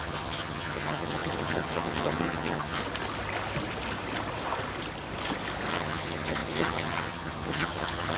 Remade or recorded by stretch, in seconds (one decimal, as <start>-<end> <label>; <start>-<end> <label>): 0.0-2.8 remade; 2.8-5.7 recorded; 5.7-8.2 remade